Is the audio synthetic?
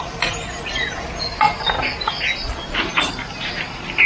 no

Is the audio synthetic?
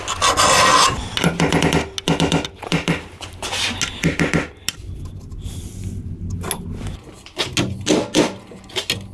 no